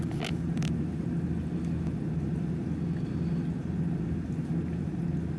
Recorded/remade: recorded